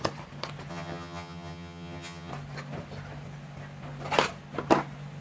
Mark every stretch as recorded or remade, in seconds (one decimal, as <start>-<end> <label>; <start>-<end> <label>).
0.0-0.7 recorded; 0.7-2.3 remade; 2.3-5.2 recorded